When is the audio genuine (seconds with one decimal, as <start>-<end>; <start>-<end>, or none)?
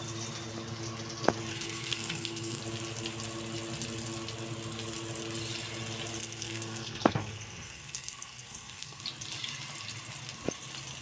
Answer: 0.0-1.5; 2.6-6.2; 9.0-11.0